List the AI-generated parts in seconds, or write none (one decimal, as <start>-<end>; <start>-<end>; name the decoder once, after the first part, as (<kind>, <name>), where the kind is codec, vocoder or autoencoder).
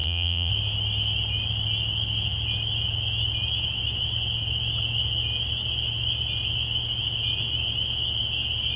0.0-0.5 (vocoder, Vocos)